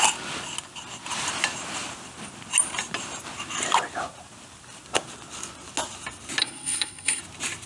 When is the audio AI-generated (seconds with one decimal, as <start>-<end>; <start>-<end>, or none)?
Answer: 6.4-7.2